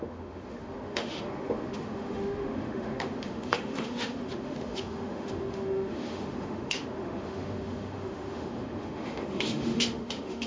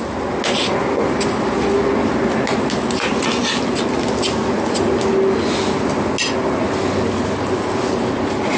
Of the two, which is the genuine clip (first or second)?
second